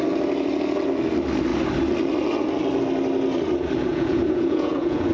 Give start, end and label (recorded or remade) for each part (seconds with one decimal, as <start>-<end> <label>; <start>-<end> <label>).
0.0-3.9 recorded; 3.9-5.1 remade